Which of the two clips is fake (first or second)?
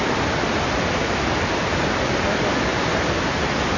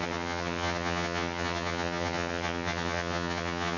second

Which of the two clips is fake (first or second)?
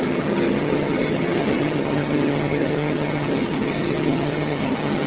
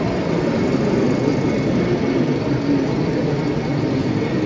first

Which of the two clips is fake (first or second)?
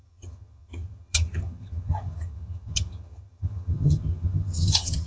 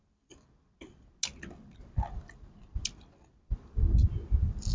first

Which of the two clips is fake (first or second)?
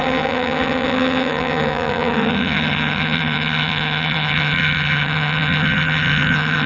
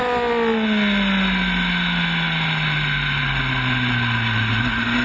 first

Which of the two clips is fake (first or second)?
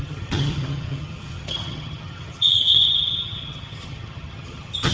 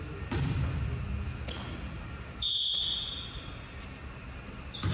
first